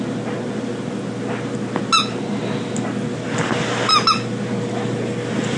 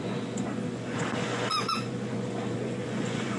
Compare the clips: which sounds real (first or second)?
first